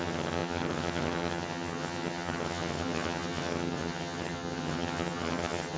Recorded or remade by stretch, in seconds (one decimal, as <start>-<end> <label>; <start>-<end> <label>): 0.0-5.8 remade

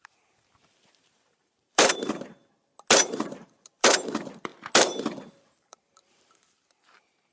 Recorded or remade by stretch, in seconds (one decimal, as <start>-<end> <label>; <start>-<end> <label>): 0.0-2.4 remade; 2.4-3.0 recorded; 3.0-4.5 remade; 4.5-5.4 recorded; 5.4-7.3 remade